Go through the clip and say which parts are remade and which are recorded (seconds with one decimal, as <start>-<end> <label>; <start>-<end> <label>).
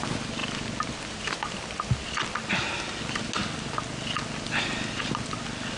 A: 0.0-5.8 recorded